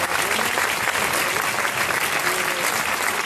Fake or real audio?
real